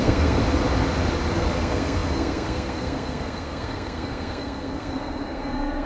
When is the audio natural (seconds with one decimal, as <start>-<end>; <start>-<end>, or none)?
0.4-1.3